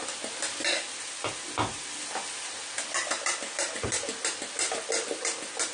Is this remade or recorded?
recorded